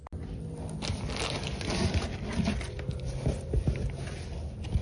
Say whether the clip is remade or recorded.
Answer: recorded